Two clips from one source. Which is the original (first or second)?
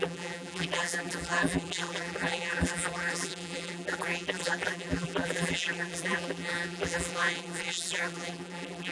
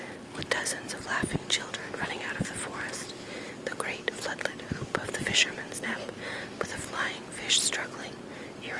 second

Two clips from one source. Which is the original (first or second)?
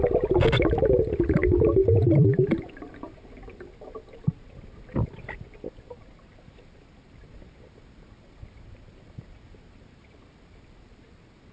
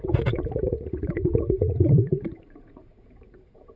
first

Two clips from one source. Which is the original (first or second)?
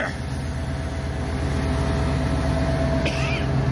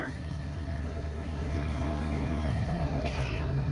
first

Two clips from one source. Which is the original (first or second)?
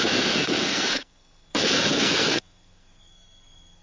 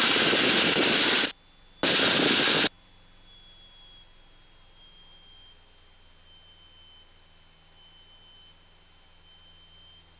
second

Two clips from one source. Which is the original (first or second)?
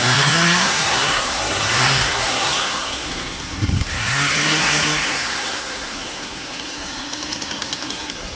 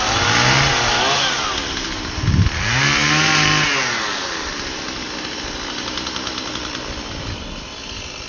second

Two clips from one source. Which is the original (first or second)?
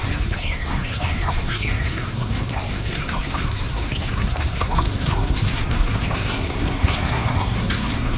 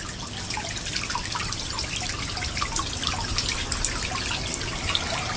second